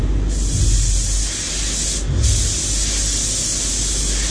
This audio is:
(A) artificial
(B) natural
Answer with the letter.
B